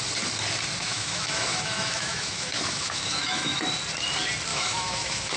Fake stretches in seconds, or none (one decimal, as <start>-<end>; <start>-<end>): 0.8-3.6; 4.5-5.4